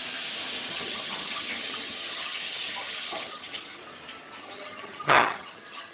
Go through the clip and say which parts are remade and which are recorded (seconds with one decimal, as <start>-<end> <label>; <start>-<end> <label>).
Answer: 0.0-0.7 recorded; 0.7-3.8 remade; 3.8-4.4 recorded; 4.4-5.9 remade